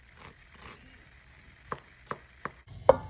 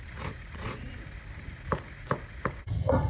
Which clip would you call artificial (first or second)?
second